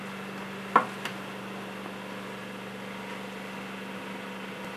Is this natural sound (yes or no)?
yes